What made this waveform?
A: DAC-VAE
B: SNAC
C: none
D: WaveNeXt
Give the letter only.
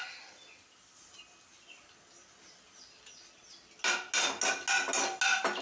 C